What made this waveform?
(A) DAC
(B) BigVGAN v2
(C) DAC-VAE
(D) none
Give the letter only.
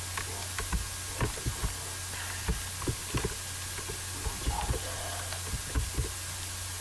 D